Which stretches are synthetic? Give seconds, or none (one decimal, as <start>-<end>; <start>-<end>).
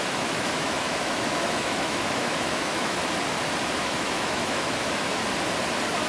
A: 0.0-3.0; 3.8-5.1